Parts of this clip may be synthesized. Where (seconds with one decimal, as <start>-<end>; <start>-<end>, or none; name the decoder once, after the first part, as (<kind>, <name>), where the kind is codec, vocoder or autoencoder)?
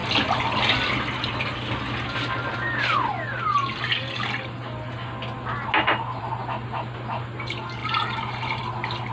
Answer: 7.8-8.6 (vocoder, BigVGAN v2)